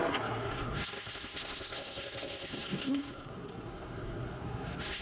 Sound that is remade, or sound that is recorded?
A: remade